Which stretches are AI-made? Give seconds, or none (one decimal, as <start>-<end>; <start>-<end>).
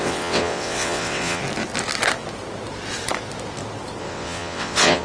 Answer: 0.0-1.4; 4.0-5.0